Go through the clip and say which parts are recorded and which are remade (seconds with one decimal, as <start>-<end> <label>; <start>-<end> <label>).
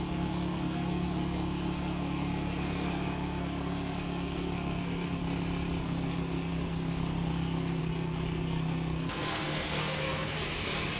0.0-5.2 remade; 5.2-5.8 recorded; 5.8-11.0 remade